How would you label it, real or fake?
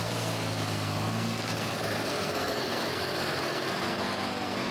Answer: fake